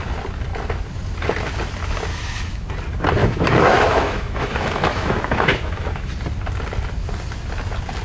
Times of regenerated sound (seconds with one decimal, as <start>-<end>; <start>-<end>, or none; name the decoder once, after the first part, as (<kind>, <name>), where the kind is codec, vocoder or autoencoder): 2.1-2.7 (autoencoder, DAC-VAE); 3.2-6.1